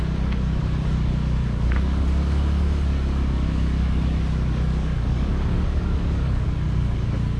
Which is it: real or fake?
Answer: fake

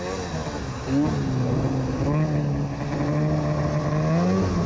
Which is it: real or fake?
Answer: real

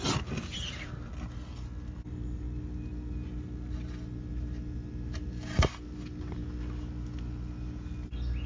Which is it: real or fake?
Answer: real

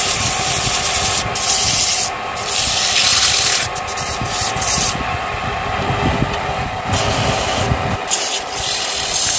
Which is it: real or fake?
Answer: real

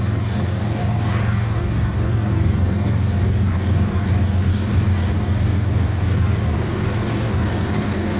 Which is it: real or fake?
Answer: fake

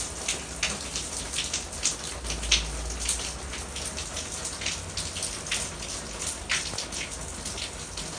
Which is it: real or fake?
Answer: real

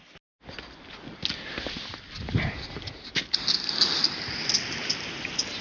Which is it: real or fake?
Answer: real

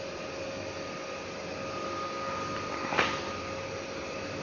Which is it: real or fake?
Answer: real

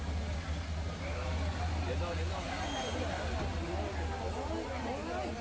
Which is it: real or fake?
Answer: real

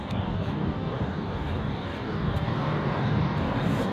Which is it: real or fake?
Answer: fake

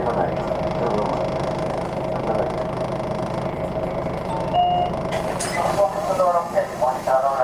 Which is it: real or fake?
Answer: real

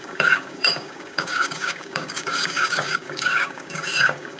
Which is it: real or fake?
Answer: fake